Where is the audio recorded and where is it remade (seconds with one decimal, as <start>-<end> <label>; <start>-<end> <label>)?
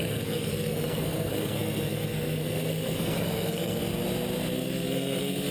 0.0-3.8 remade; 3.8-4.5 recorded; 4.5-5.5 remade